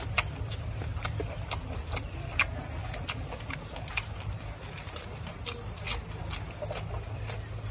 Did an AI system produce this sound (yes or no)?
no